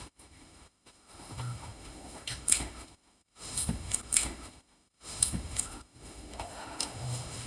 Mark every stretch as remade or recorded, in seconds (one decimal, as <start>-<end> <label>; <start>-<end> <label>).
0.0-7.5 remade